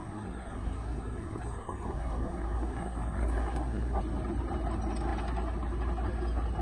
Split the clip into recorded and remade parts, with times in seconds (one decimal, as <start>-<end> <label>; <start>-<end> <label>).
0.0-4.0 remade; 4.0-6.6 recorded